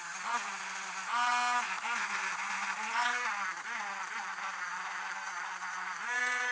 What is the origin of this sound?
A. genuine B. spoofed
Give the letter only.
A